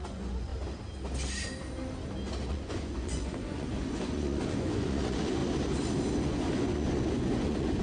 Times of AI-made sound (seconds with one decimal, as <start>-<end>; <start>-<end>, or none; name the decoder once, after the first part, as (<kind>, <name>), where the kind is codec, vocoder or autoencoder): 0.0-0.5 (vocoder, Vocos); 2.5-5.4; 6.2-7.8